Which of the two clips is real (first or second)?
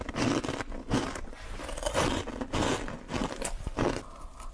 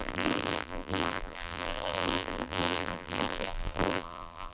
first